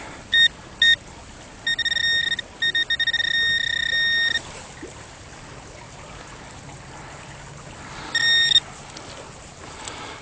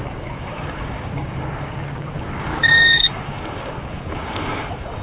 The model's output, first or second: second